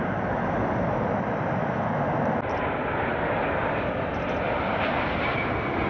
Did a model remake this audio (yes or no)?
no